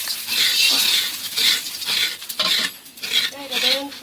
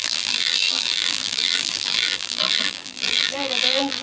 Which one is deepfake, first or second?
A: second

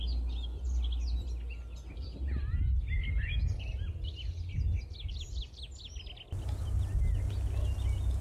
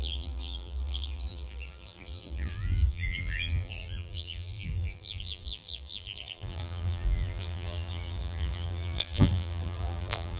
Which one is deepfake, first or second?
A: second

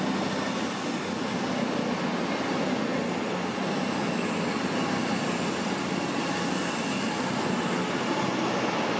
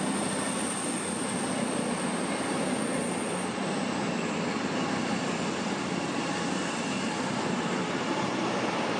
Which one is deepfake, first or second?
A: second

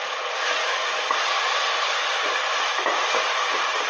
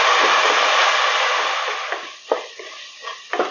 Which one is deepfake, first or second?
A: first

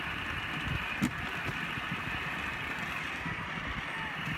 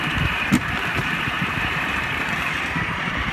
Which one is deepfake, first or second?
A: second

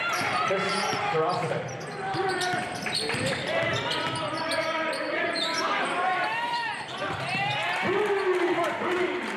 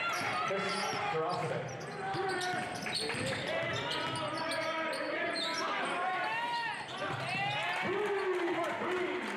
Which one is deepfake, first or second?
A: first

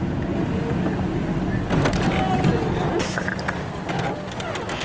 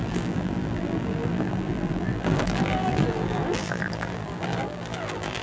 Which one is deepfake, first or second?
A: second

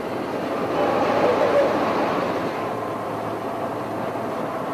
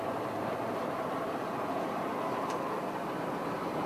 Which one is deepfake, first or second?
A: second